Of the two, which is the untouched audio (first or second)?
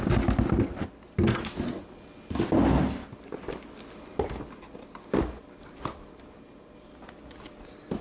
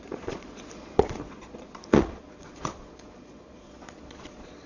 first